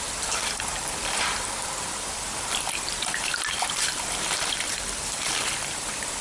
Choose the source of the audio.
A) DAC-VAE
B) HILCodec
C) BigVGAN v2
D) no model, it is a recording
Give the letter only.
C